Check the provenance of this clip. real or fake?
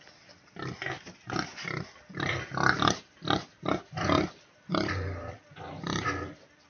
real